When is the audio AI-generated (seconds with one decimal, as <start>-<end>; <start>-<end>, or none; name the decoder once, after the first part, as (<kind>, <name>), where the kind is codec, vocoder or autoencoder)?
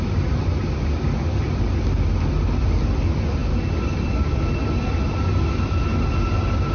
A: none